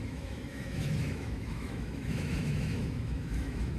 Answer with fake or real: fake